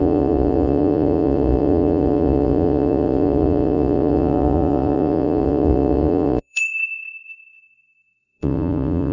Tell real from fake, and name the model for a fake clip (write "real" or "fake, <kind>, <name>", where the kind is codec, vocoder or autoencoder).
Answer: fake, vocoder, Vocos